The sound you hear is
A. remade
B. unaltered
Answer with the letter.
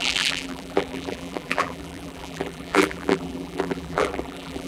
A